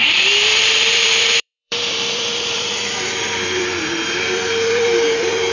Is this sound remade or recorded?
remade